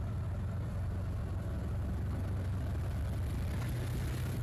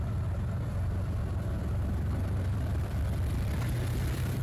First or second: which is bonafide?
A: first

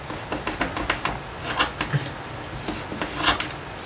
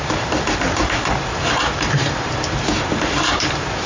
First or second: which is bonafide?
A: first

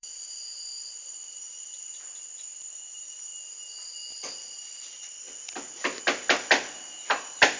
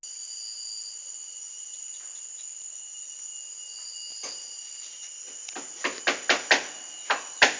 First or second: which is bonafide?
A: second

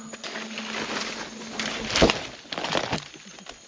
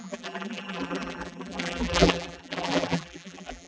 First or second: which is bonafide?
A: first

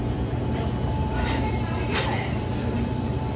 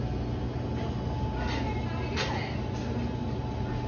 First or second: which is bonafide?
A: second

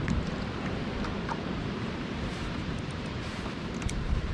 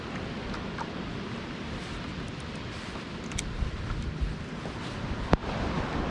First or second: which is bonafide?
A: second